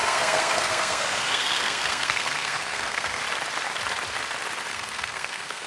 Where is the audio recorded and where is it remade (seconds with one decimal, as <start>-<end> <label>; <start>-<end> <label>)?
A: 0.0-3.2 remade; 3.2-4.7 recorded; 4.7-5.7 remade